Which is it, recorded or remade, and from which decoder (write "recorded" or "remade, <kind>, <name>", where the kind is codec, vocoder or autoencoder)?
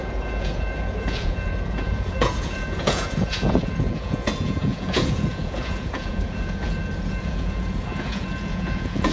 remade, vocoder, Vocos